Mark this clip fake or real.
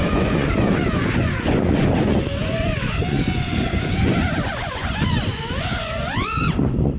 fake